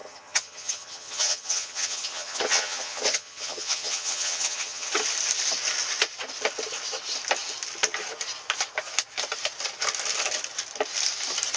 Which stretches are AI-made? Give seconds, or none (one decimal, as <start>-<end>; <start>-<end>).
0.0-4.9